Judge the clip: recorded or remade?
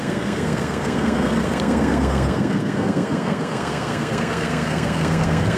remade